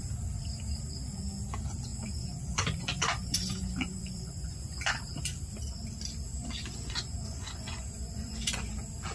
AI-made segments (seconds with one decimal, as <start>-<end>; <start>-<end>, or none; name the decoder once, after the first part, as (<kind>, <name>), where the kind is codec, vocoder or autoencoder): 1.9-5.0 (vocoder, Vocos); 6.4-8.6